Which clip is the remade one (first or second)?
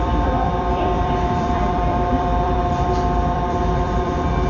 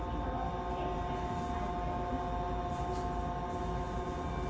first